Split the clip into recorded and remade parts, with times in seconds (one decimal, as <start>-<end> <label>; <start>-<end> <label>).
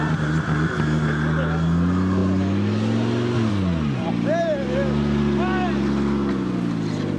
0.0-7.2 recorded